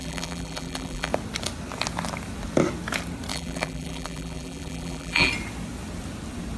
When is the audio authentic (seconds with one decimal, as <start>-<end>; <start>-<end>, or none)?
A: 1.1-3.3; 5.3-6.6